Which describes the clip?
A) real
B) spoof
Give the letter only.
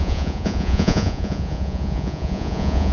B